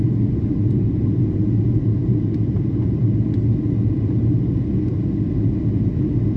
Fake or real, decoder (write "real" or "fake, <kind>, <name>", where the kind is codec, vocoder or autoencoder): real